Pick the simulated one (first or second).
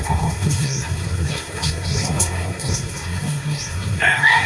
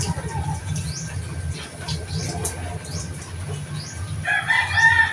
first